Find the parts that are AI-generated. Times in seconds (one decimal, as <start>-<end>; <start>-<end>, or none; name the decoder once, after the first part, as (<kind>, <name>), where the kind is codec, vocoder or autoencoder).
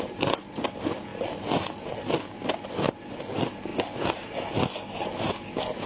none